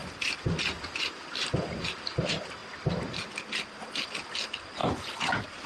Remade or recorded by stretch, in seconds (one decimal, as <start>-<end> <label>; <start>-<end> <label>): 0.0-0.9 remade; 0.9-2.6 recorded; 2.6-4.3 remade; 4.3-4.8 recorded; 4.8-5.7 remade